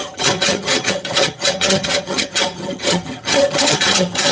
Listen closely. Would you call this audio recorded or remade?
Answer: remade